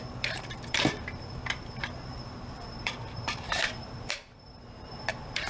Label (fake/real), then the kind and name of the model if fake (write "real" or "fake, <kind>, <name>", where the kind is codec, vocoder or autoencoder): fake, vocoder, BigVGAN v2